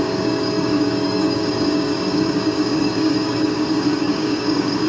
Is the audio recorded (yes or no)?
no